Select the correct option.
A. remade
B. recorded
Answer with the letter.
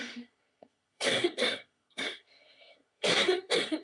A